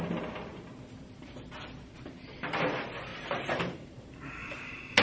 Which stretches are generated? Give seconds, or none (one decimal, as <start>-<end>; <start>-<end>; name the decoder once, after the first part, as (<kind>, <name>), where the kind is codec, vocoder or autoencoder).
0.5-1.5 (vocoder, BigVGAN v2); 3.1-4.6